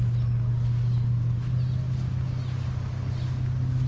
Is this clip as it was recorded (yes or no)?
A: yes